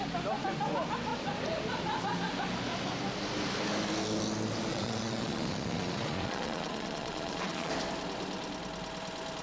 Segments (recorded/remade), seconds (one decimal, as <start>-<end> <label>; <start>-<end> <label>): 0.0-4.7 recorded; 4.7-7.7 remade; 7.7-9.4 recorded

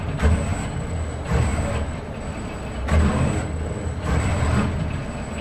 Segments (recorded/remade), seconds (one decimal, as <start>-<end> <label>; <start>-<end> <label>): 0.0-5.4 recorded

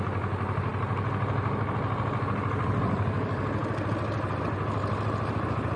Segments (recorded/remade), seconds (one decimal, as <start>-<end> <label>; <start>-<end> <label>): 0.0-5.8 recorded